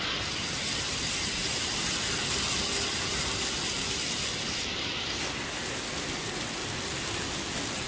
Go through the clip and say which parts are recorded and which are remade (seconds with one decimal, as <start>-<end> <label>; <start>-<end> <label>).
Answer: 0.0-7.9 recorded